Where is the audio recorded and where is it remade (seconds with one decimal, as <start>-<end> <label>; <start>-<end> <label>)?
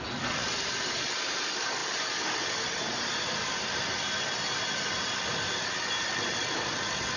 0.0-7.2 recorded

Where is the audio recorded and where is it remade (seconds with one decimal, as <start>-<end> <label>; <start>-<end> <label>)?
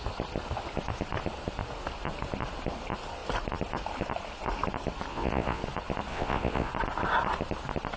0.0-5.1 recorded; 5.1-5.6 remade; 5.6-6.1 recorded; 6.1-6.7 remade; 6.7-8.0 recorded